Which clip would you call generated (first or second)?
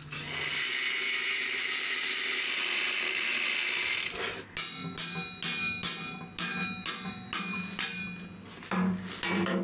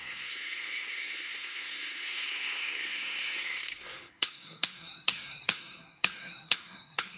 second